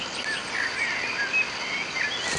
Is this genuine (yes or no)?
yes